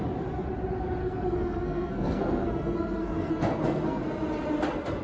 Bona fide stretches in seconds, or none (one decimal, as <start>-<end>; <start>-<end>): 0.0-1.0; 4.0-5.0